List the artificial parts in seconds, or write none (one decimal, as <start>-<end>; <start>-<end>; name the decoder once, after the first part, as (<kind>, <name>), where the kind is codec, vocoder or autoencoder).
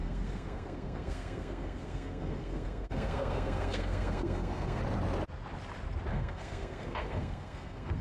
0.0-4.8 (codec, SNAC); 6.1-8.0